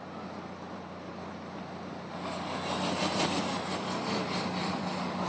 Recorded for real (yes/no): yes